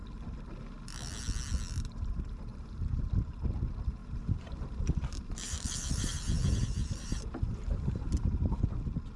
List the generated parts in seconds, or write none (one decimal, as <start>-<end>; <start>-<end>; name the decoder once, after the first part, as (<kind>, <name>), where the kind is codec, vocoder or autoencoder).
2.5-3.0 (vocoder, BigVGAN v2); 4.0-8.6